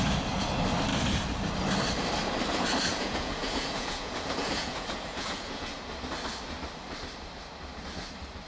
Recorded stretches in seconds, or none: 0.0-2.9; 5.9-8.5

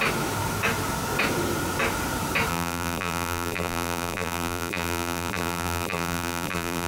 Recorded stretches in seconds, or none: 0.0-2.5

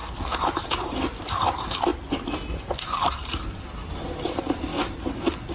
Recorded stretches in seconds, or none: 0.0-1.2; 1.9-2.5

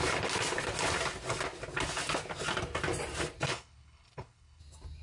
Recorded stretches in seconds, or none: 0.0-3.5; 4.6-5.0

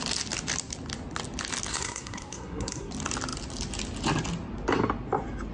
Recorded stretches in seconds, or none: 0.0-1.7; 2.9-5.5

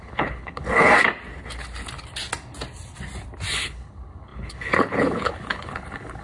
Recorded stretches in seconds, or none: 0.9-3.5

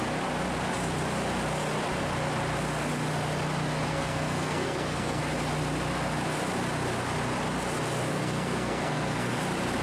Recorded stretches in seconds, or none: 0.0-3.9; 5.2-8.1; 9.4-9.8

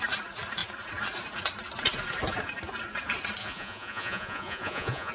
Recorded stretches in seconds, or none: 0.0-3.4